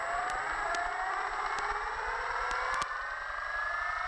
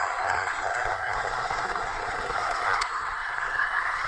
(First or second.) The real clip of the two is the first